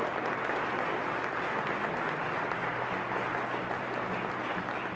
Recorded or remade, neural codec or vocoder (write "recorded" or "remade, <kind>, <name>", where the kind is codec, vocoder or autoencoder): recorded